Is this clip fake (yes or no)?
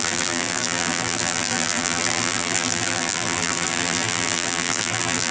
yes